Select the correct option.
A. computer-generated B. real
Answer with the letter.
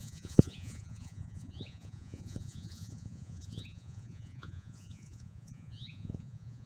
A